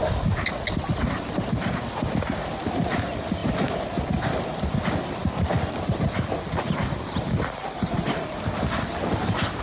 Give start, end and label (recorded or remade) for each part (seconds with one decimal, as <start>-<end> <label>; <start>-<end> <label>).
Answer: 0.0-9.6 recorded